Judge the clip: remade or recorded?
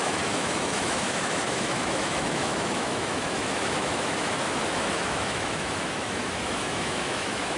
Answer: remade